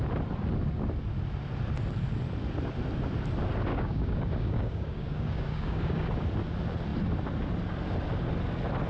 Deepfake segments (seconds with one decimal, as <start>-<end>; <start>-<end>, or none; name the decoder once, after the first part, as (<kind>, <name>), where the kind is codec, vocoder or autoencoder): 3.7-6.1 (codec, DAC)